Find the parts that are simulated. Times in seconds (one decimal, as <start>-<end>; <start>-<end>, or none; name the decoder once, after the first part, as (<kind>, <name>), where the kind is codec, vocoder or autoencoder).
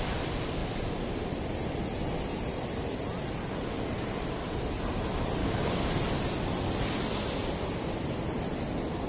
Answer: 5.4-5.9 (codec, DAC)